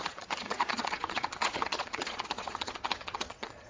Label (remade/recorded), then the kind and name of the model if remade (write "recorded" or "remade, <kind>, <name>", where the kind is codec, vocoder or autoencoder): remade, vocoder, Vocos